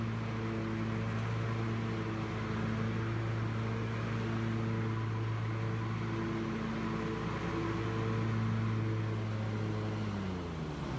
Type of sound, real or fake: real